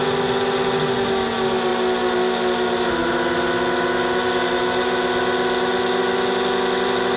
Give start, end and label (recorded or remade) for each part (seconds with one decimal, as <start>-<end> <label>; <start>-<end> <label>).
0.0-7.2 recorded